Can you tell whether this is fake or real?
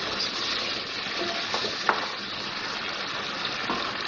real